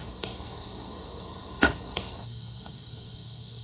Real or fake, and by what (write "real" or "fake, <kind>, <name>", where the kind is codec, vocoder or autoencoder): fake, codec, SNAC